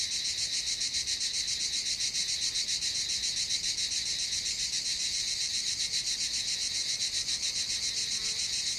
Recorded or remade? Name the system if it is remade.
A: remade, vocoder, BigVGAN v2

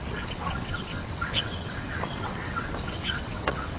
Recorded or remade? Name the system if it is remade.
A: remade, vocoder, WaveNeXt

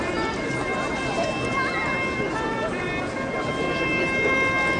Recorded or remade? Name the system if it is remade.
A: recorded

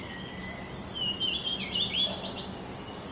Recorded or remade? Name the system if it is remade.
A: recorded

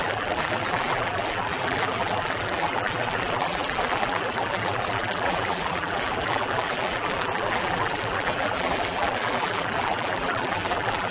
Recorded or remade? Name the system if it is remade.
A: remade, vocoder, BigVGAN v2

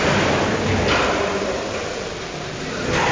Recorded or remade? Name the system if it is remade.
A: recorded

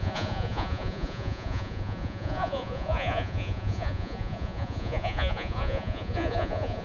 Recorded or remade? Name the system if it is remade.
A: remade, vocoder, Vocos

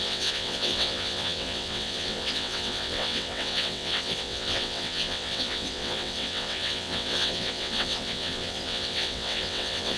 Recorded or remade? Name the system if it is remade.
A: remade, vocoder, WaveNeXt